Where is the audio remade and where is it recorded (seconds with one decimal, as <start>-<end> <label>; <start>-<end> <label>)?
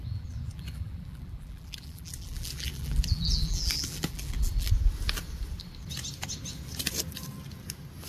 0.0-4.7 remade; 4.7-8.1 recorded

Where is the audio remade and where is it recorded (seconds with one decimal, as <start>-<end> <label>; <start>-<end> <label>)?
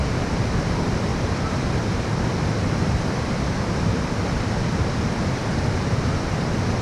0.0-1.1 recorded; 1.1-4.1 remade; 4.1-6.8 recorded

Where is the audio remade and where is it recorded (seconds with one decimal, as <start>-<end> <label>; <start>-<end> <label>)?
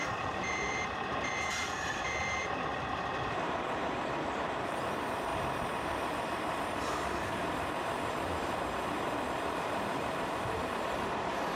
0.0-11.6 remade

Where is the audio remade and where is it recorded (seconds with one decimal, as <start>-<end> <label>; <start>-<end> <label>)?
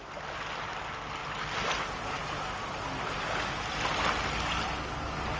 0.0-5.4 recorded